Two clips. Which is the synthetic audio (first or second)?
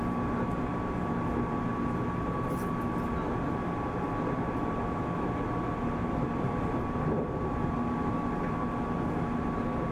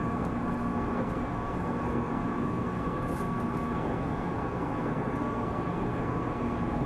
second